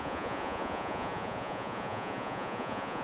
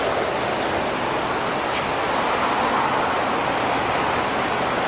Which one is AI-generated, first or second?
first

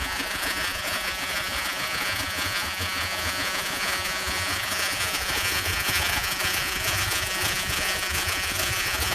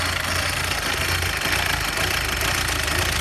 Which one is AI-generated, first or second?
first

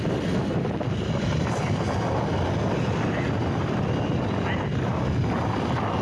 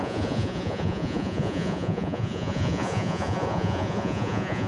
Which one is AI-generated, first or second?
second